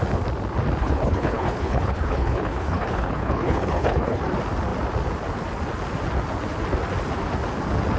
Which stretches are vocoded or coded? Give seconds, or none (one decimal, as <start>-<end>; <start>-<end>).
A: 0.8-4.2